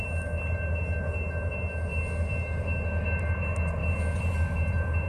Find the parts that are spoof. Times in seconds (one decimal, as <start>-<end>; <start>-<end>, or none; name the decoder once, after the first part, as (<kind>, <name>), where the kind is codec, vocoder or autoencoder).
none